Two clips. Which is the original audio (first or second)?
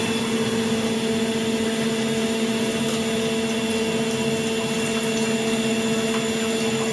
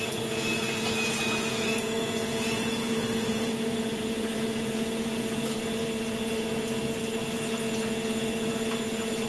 first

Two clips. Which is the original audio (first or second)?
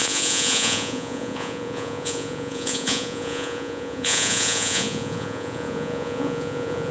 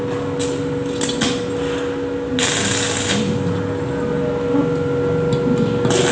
second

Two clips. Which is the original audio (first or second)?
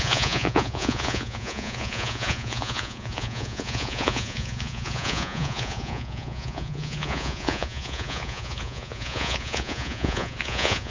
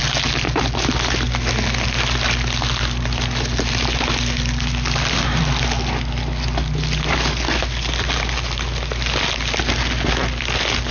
second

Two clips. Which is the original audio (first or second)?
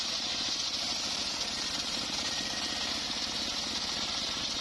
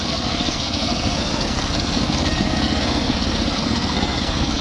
first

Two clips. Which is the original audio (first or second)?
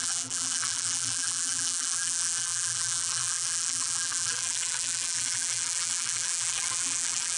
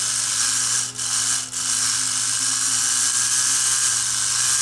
second